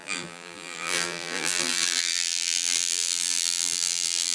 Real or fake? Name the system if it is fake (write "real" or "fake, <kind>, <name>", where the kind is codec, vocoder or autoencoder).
fake, vocoder, BigVGAN v2